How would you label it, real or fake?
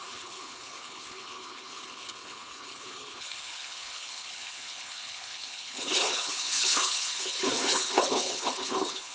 fake